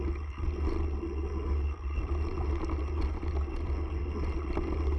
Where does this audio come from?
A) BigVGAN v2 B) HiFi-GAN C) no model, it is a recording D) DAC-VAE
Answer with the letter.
C